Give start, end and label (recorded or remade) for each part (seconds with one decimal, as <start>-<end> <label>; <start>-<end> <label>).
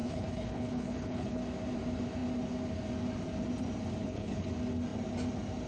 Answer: 0.0-1.4 remade; 1.4-4.0 recorded; 4.0-4.5 remade; 4.5-5.7 recorded